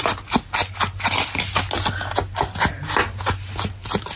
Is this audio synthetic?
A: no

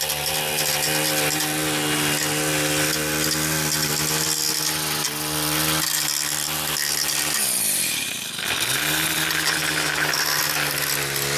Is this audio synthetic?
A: no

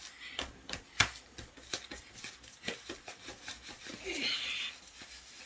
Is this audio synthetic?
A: no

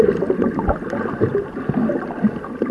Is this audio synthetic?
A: no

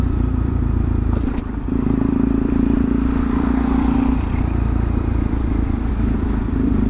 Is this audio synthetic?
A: yes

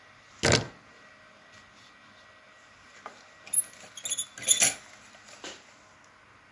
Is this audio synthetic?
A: no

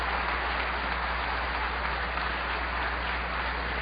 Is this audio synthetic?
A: no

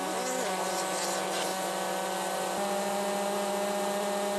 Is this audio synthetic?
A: no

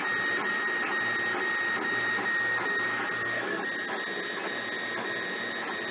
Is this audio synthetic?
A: no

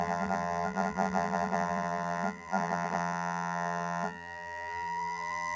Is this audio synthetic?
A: yes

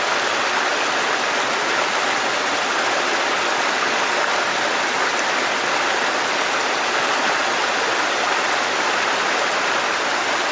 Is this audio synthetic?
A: no